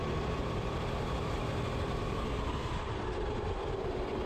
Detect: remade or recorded remade